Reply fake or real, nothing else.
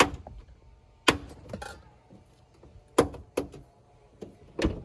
real